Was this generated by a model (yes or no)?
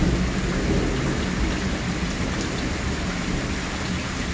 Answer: no